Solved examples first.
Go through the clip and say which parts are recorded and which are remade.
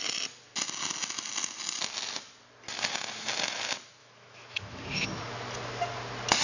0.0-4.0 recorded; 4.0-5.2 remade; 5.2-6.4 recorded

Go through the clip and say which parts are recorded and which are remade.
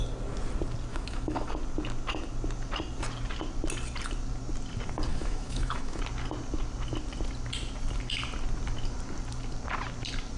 0.0-0.9 recorded; 0.9-1.5 remade; 1.5-5.1 recorded; 5.1-6.0 remade; 6.0-10.4 recorded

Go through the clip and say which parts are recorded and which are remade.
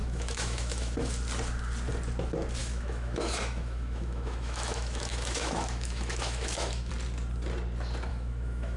0.0-1.1 remade; 1.1-2.6 recorded; 2.6-6.9 remade; 6.9-8.1 recorded; 8.1-8.8 remade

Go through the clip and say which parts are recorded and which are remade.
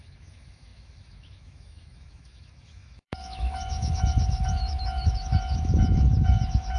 0.0-6.8 remade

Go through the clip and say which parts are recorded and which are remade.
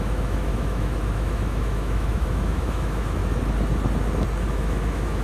0.0-3.2 remade; 3.2-4.5 recorded; 4.5-5.2 remade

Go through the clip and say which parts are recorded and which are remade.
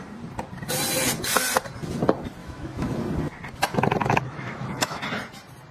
0.0-2.4 recorded; 2.4-3.0 remade; 3.0-4.0 recorded; 4.0-5.0 remade; 5.0-5.7 recorded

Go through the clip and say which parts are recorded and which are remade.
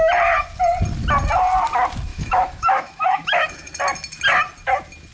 0.0-2.1 recorded; 2.1-3.8 remade; 3.8-5.1 recorded